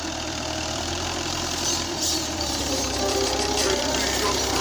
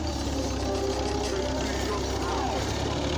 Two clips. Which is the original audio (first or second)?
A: second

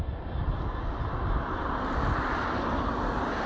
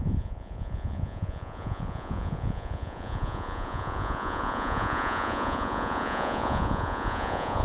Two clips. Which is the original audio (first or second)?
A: first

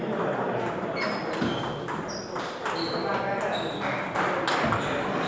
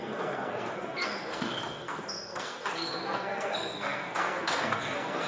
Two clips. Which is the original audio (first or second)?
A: first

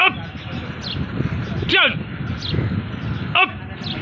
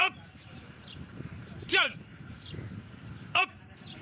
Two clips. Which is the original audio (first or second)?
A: first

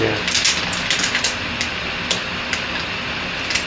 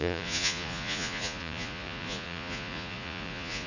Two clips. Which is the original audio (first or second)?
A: first